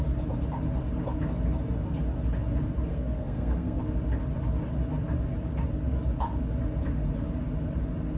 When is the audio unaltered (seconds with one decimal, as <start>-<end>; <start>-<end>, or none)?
0.0-2.9; 3.8-8.2